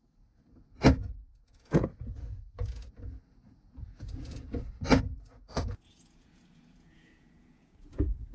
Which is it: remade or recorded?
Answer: remade